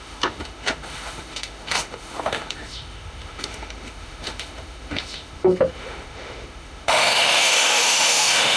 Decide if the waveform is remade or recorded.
remade